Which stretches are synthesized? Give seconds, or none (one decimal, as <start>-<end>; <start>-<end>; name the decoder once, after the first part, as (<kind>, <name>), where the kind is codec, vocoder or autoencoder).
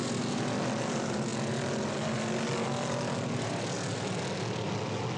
none